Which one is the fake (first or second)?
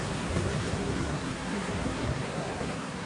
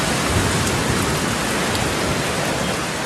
first